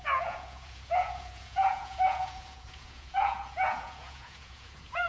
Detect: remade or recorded remade